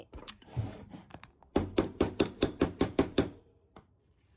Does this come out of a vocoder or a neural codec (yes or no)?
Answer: yes